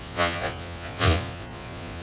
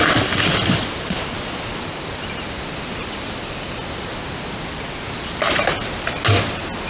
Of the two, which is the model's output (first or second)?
first